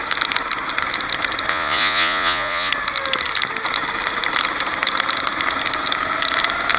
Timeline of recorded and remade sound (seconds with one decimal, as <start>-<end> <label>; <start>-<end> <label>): 0.0-1.5 recorded; 1.5-2.7 remade; 2.7-6.8 recorded